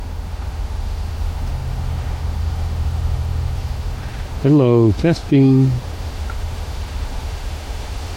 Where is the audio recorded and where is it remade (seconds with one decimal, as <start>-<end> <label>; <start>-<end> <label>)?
0.0-8.2 remade